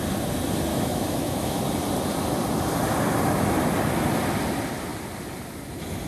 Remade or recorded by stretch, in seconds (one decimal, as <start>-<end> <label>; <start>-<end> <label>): 0.0-0.7 recorded; 0.7-1.6 remade; 1.6-6.1 recorded